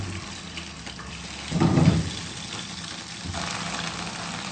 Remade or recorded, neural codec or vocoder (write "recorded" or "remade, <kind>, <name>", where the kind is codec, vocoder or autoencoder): recorded